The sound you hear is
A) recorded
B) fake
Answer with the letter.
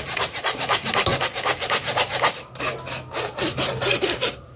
A